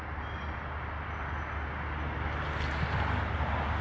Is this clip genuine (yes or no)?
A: yes